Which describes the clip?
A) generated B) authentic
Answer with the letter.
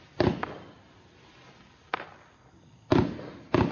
B